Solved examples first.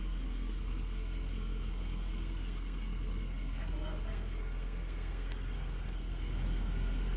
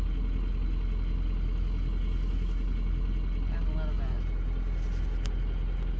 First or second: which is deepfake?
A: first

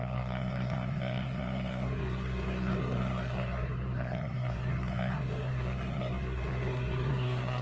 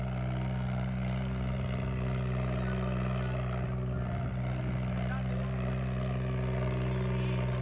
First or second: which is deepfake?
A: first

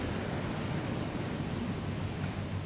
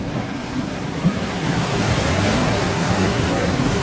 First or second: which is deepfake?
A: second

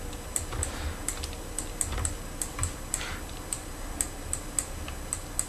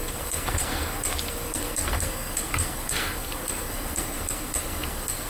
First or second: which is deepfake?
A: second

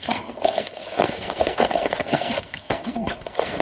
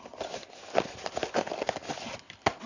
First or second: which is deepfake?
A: first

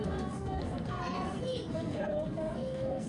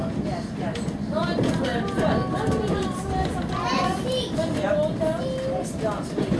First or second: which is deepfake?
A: first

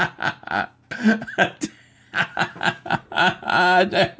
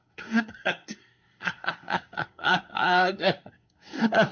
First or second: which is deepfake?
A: second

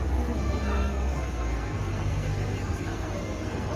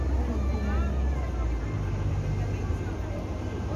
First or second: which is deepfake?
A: first